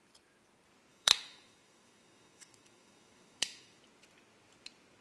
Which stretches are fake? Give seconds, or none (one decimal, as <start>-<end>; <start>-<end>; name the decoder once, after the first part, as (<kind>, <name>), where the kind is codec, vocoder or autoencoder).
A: 0.9-3.8 (autoencoder, DAC-VAE)